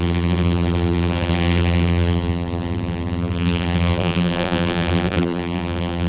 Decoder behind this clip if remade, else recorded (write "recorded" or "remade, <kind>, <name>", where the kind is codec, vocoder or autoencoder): remade, vocoder, BigVGAN v2